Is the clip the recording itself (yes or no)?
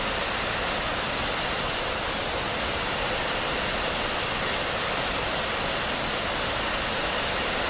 yes